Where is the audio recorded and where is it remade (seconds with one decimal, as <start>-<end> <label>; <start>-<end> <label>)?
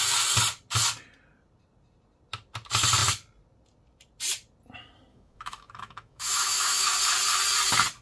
0.0-5.1 recorded; 5.1-6.9 remade; 6.9-8.0 recorded